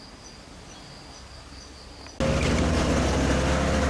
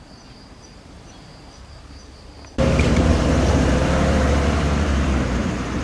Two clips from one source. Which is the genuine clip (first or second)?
first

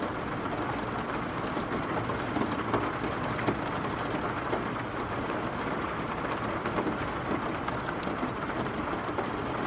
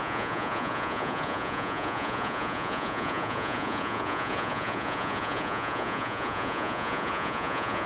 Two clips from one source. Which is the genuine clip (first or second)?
first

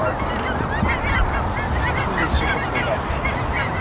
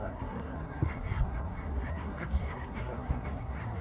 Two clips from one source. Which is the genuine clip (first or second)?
first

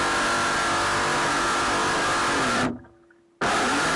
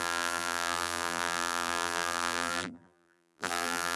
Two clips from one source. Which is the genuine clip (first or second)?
first